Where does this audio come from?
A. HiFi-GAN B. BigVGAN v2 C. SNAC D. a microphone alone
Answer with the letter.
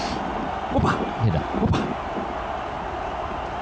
D